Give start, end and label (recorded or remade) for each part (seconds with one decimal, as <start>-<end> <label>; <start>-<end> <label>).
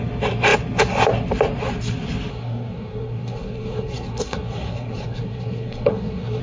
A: 0.0-2.3 recorded; 2.3-6.4 remade